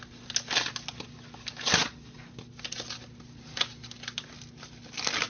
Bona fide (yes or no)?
yes